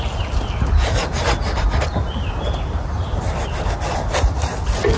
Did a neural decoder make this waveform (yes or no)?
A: no